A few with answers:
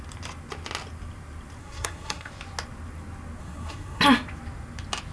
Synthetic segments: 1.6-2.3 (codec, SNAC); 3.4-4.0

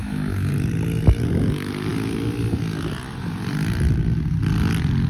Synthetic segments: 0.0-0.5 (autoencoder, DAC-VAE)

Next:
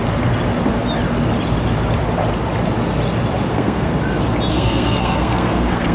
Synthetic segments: 3.5-3.9 (codec, SNAC); 4.5-5.9

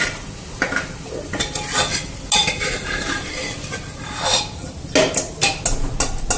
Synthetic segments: none

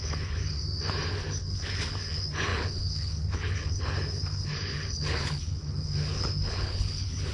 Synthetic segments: 0.0-0.6 (codec, HILCodec); 1.1-7.3

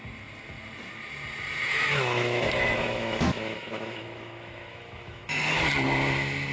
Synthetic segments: 1.7-5.6 (autoencoder, DAC-VAE)